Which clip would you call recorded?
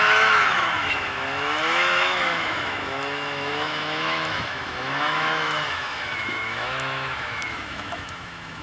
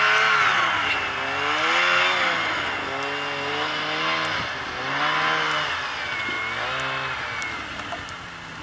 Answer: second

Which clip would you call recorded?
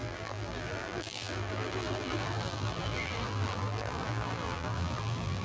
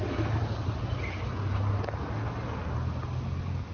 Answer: second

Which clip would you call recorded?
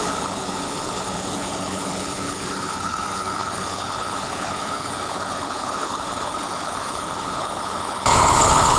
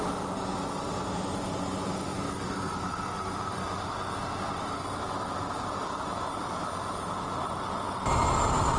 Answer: second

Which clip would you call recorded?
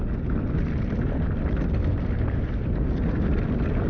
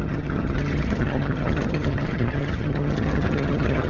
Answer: first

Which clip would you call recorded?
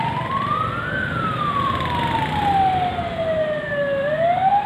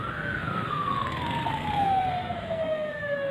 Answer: first